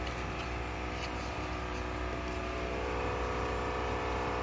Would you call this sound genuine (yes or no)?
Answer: yes